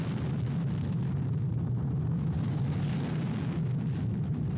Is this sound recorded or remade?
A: recorded